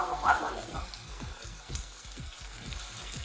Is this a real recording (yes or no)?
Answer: no